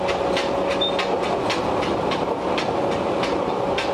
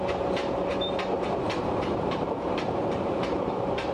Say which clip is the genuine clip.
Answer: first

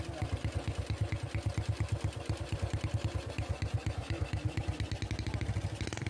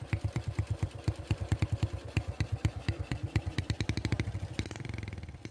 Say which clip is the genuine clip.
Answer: first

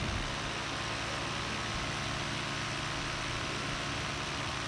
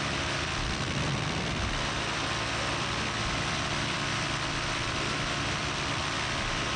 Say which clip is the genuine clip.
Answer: first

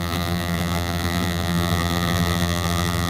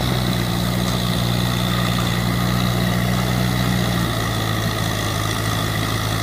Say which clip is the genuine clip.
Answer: second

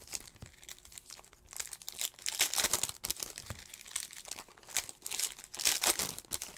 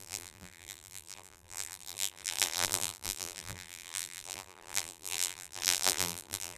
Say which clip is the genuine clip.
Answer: first